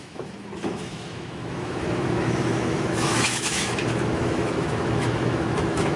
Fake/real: fake